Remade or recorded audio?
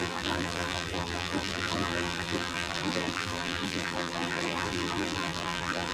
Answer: remade